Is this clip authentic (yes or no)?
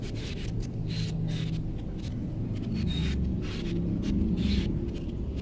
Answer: yes